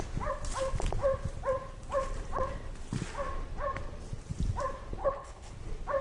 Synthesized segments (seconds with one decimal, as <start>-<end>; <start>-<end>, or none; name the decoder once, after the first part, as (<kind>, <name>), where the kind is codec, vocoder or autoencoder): 5.0-5.5 (codec, HILCodec)